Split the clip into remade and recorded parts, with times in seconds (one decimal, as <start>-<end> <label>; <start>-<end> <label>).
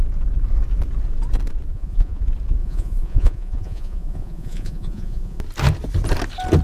0.0-1.7 recorded; 1.7-2.2 remade; 2.2-2.6 recorded; 2.6-5.4 remade; 5.4-6.6 recorded